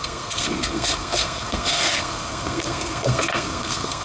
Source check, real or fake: fake